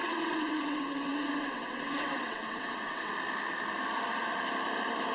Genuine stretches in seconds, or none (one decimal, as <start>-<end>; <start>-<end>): 3.1-5.1